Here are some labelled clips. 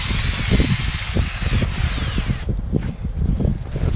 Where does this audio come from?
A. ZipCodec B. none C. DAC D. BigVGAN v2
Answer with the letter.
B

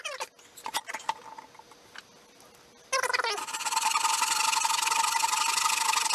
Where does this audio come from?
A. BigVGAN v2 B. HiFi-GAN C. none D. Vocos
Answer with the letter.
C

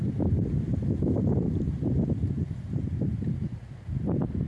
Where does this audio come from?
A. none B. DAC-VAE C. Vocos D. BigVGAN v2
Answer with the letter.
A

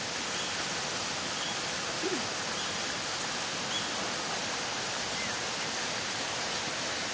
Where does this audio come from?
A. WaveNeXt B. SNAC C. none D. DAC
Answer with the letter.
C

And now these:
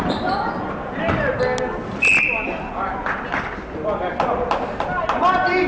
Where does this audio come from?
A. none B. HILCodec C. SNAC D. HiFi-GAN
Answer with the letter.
A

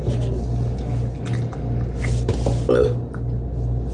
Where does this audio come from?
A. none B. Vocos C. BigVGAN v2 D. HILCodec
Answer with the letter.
A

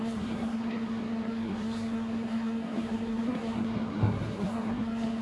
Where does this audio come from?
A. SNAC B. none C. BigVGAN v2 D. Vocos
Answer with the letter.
A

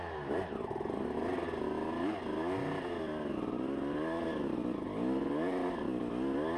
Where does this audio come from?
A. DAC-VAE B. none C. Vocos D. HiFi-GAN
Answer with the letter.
B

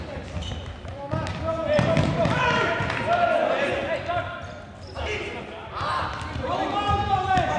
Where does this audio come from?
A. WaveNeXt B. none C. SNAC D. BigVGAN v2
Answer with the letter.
B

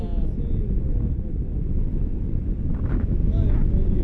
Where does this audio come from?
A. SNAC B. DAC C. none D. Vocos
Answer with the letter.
C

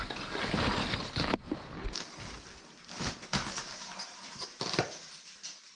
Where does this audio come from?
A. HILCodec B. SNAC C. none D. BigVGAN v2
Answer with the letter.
C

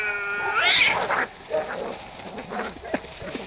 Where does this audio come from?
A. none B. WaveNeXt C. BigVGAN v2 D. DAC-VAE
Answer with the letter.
A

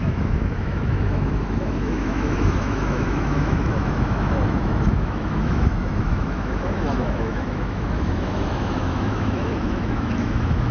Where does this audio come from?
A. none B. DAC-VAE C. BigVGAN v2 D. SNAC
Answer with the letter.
B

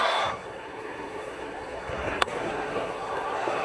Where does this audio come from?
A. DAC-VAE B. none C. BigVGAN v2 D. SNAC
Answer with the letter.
D